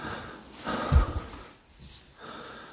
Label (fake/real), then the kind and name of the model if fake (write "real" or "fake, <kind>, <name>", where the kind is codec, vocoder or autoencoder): real